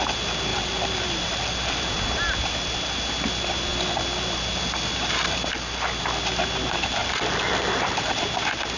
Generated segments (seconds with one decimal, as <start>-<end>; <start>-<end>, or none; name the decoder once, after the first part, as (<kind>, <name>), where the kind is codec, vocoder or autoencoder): 0.5-1.8 (vocoder, BigVGAN v2); 7.0-8.2